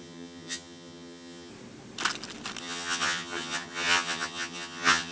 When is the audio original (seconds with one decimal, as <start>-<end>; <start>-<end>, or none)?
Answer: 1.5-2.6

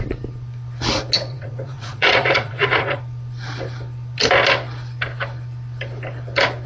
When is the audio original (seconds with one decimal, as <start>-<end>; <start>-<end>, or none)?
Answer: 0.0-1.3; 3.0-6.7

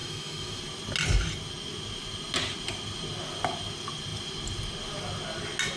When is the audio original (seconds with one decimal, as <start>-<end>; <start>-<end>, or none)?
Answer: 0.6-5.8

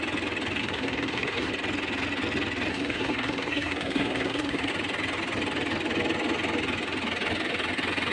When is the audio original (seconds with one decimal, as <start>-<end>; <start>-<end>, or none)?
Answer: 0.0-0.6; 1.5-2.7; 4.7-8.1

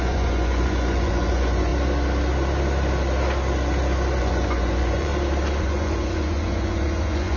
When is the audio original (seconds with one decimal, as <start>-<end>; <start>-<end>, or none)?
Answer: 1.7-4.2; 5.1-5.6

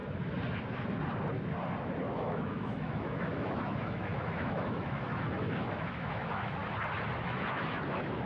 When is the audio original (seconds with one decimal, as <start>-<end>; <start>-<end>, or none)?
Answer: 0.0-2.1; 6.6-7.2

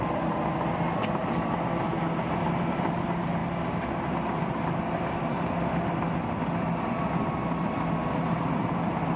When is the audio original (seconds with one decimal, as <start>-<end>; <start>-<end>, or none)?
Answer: 0.0-9.2

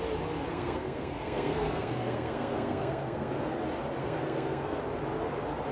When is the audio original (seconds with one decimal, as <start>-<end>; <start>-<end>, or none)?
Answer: 0.0-0.5; 3.6-4.0; 4.8-5.7